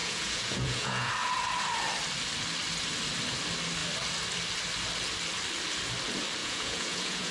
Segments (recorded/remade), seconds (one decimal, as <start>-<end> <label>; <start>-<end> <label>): 0.0-1.1 remade; 1.1-6.4 recorded; 6.4-7.3 remade